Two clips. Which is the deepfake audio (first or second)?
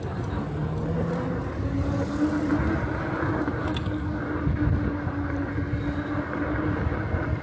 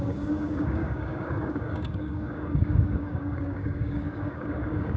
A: second